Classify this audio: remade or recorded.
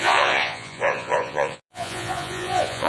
remade